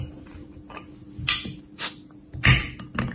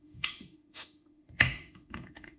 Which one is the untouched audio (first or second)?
first